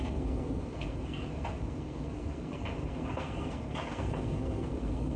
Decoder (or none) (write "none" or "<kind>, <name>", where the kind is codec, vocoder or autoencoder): codec, SNAC